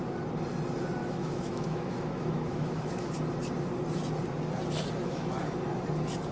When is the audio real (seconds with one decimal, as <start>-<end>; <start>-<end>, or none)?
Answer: 0.0-1.0; 3.1-5.0; 5.6-6.3